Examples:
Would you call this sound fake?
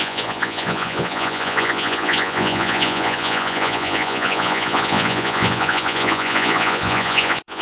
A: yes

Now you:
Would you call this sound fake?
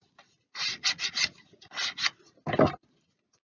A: no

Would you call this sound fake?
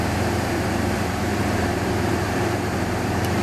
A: yes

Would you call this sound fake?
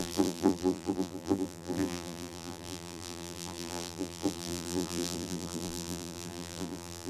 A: yes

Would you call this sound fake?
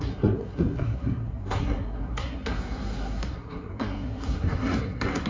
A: yes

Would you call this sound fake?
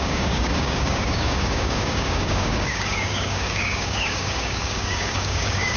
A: yes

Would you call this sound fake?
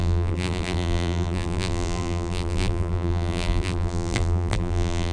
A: yes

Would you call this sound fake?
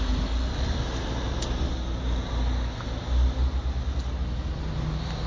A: no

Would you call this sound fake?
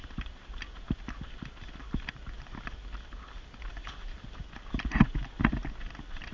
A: no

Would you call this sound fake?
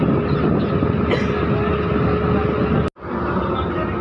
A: no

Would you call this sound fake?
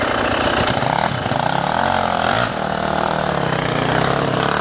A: no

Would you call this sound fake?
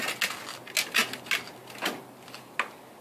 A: no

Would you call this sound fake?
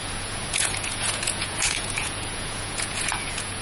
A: yes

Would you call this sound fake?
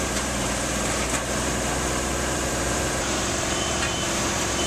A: yes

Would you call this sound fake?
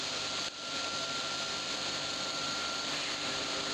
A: yes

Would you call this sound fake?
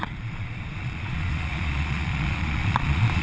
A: yes